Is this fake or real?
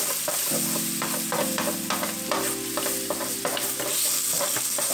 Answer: real